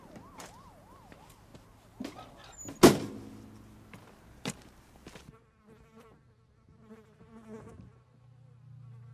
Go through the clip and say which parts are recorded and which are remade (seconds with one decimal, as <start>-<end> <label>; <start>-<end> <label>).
0.0-9.1 recorded